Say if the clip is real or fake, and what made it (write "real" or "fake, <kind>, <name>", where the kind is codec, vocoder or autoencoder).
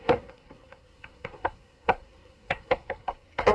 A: fake, codec, SNAC